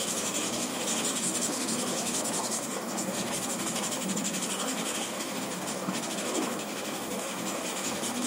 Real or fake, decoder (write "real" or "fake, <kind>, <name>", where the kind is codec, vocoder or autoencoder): fake, codec, DAC